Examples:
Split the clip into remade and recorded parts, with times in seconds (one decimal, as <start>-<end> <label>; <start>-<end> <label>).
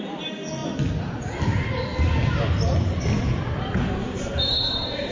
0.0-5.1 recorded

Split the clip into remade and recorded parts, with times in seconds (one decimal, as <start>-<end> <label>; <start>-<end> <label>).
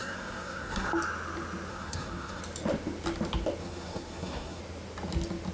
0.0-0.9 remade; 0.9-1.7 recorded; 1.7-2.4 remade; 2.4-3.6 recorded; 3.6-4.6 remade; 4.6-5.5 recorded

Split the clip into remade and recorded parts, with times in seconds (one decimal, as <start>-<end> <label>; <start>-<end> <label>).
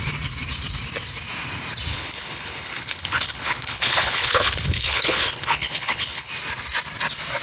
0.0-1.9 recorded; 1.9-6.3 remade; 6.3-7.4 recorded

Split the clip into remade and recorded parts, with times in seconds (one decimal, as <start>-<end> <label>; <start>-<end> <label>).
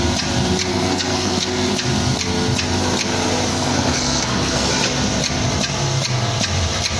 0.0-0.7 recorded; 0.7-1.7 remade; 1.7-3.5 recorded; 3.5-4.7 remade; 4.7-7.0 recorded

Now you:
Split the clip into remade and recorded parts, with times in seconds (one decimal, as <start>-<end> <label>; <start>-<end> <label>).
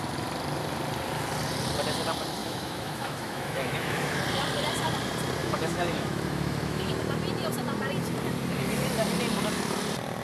0.0-2.4 recorded; 2.4-4.2 remade; 4.2-5.4 recorded; 5.4-6.9 remade; 6.9-10.2 recorded